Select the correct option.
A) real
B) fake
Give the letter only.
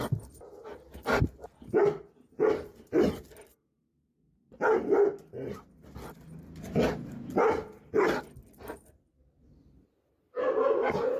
A